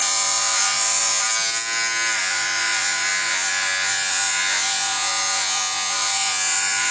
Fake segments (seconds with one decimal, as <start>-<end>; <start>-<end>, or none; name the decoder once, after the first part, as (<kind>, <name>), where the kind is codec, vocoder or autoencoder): 0.0-1.2 (vocoder, Vocos); 2.2-6.9